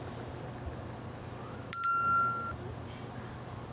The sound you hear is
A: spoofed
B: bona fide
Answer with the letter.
B